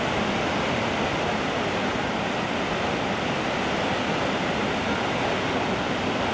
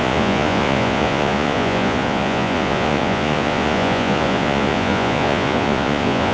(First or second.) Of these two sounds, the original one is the first